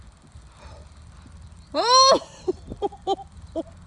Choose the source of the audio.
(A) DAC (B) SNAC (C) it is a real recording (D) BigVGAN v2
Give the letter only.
C